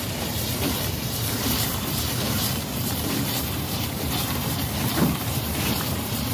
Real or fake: fake